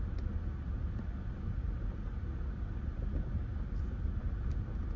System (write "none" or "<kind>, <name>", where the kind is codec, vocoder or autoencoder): none